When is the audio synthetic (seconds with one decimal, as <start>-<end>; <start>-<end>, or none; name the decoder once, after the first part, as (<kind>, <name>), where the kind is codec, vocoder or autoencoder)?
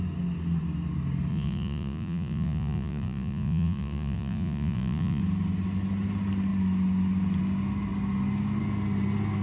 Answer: 1.3-5.2 (vocoder, Vocos)